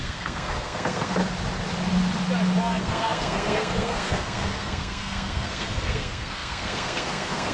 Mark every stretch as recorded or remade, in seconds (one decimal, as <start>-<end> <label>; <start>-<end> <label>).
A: 0.0-1.2 remade; 1.2-2.6 recorded; 2.6-7.5 remade